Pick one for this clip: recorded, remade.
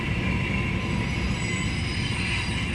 recorded